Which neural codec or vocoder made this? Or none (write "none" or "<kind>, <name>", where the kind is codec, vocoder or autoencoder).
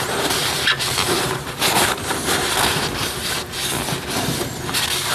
vocoder, BigVGAN v2